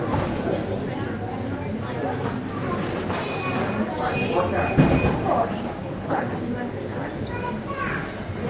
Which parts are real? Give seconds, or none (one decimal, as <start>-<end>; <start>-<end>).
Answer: 0.0-5.8; 6.3-8.5